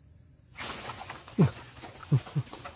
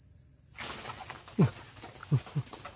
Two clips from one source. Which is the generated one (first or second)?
first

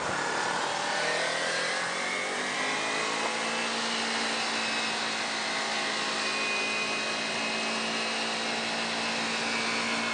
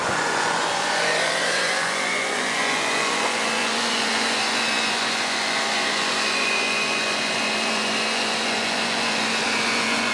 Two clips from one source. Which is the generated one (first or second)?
second